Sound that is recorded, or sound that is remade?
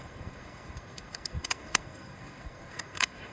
remade